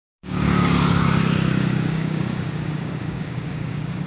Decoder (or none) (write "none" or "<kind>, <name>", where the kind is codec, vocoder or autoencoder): codec, DAC